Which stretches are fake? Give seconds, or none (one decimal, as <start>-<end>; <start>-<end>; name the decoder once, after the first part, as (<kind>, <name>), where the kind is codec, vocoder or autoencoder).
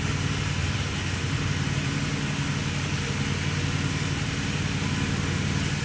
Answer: 0.6-1.9 (vocoder, BigVGAN v2)